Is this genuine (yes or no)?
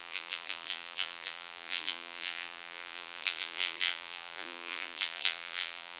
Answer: no